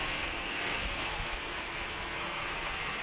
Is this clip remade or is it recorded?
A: remade